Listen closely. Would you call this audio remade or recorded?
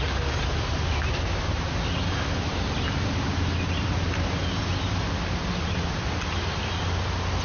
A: recorded